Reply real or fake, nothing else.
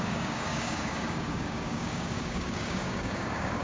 fake